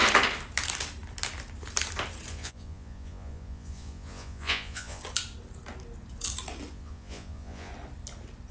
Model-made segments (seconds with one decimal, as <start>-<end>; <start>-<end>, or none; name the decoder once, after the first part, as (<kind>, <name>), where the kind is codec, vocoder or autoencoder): 2.3-5.0 (vocoder, Vocos); 6.7-7.7